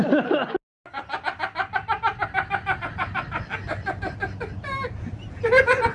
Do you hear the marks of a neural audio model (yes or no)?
no